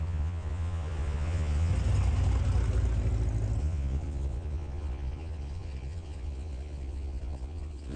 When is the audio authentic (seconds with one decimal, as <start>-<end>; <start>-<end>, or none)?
1.7-3.6